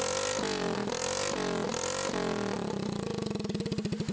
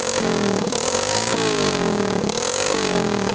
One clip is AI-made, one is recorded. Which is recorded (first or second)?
first